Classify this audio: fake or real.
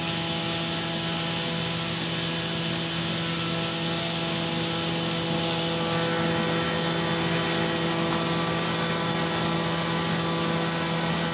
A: real